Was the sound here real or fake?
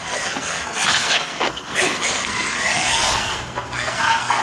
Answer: fake